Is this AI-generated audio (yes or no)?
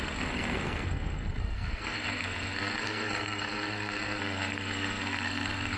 yes